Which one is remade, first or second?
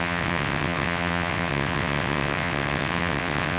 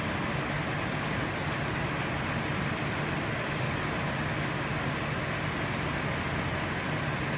first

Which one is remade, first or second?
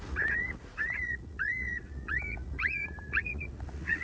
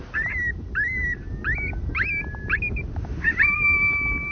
first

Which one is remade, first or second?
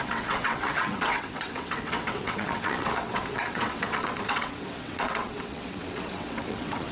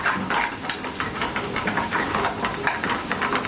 first